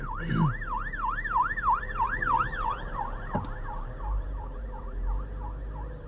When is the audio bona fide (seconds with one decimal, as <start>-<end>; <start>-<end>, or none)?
0.0-1.4; 5.1-6.1